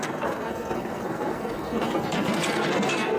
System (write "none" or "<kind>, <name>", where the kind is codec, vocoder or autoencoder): codec, SNAC